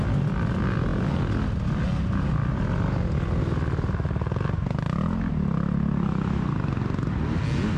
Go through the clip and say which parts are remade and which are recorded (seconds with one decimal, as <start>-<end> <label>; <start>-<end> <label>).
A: 0.0-7.8 recorded